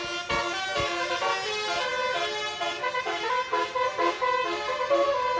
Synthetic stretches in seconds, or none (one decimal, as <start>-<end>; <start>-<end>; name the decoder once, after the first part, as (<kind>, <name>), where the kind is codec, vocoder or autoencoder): none